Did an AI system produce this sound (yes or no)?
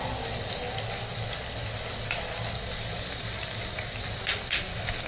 no